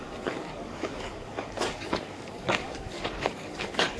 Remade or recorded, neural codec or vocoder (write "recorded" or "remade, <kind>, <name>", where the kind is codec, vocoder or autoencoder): remade, codec, DAC